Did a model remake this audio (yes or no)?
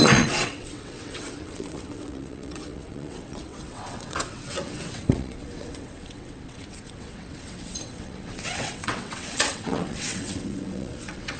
yes